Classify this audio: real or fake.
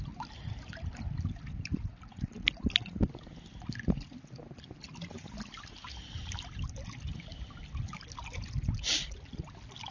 real